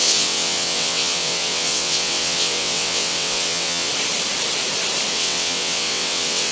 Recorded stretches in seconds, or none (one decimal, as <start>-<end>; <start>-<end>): 3.9-5.1